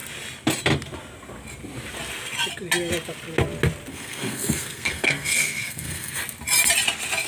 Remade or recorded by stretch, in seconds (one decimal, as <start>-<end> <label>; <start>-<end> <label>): 0.0-3.9 recorded; 3.9-6.2 remade; 6.2-7.3 recorded